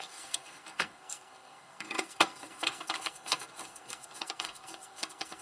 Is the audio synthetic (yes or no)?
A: yes